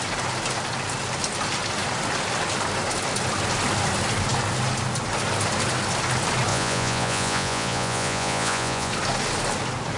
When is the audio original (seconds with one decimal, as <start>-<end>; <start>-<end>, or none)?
0.0-6.5; 8.9-10.0